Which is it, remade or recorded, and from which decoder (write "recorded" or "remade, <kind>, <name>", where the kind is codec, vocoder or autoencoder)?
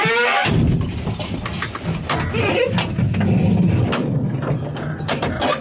recorded